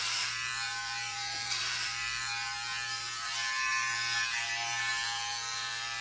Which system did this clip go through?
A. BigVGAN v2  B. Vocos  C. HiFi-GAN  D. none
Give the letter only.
A